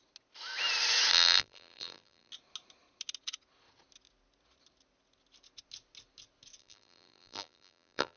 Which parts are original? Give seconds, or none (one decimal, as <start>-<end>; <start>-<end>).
0.0-1.1; 2.3-6.6